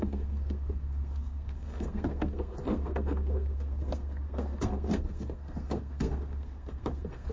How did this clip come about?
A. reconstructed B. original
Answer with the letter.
A